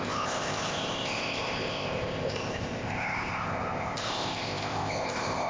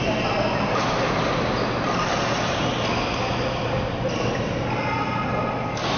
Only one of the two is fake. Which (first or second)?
first